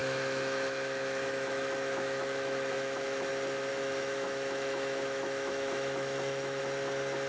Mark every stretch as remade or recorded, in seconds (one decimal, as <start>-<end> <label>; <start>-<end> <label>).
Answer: 0.0-3.3 remade; 3.3-3.7 recorded; 3.7-6.6 remade; 6.6-7.3 recorded